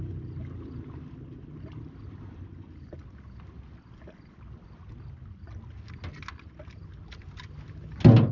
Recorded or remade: recorded